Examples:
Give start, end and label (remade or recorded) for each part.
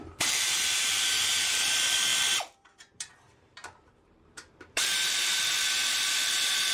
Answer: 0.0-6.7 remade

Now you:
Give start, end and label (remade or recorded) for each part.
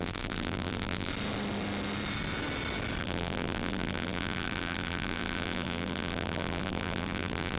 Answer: 0.0-1.1 remade; 1.1-3.0 recorded; 3.0-7.6 remade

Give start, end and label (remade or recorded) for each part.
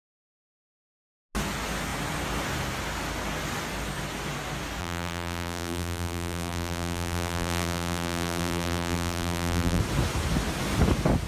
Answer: 0.0-4.8 recorded; 4.8-9.8 remade; 9.8-11.3 recorded